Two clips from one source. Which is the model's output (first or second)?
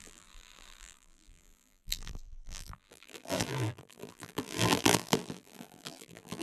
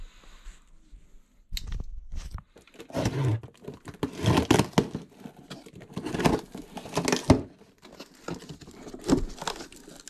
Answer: first